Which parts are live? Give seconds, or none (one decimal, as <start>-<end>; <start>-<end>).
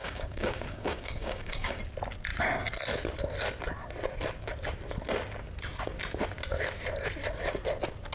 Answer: 1.8-8.1